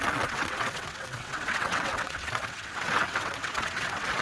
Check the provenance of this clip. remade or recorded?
remade